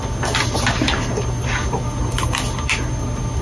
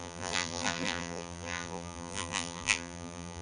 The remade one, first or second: second